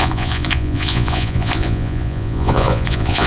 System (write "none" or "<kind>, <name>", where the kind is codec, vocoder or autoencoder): vocoder, Vocos